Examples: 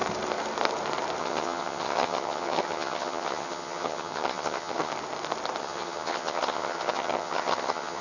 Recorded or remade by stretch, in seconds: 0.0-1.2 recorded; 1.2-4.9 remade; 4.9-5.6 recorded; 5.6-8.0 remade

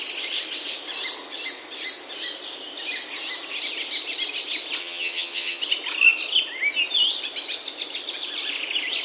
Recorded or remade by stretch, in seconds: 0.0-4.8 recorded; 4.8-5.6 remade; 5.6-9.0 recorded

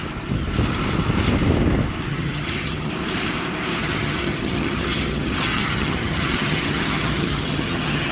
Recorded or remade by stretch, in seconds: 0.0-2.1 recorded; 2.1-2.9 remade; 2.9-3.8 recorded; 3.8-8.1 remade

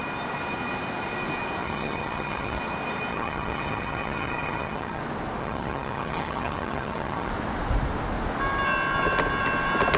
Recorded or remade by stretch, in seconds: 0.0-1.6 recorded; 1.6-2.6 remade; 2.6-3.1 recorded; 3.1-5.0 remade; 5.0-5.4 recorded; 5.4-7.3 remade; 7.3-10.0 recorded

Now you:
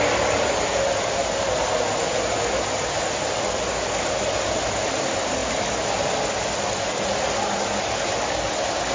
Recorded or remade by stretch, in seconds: 0.0-8.9 recorded

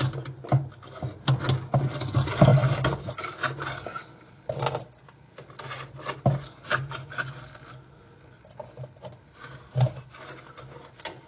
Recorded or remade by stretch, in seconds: 0.0-11.3 recorded